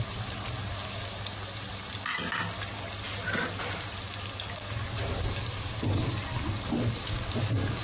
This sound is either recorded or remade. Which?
recorded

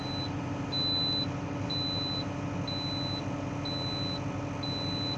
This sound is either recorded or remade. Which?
recorded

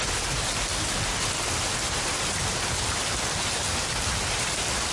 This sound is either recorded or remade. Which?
recorded